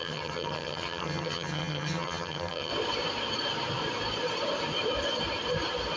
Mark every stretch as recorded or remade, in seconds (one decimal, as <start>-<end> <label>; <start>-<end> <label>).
0.0-2.7 remade; 2.7-6.0 recorded